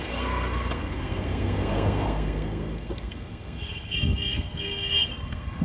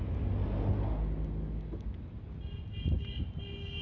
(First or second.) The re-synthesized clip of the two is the first